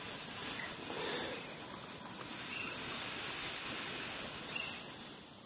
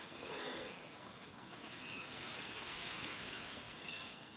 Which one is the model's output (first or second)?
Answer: second